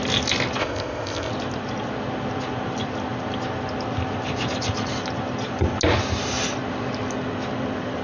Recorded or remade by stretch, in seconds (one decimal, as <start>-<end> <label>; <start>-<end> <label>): 0.0-0.6 recorded; 0.6-1.3 remade; 1.3-8.0 recorded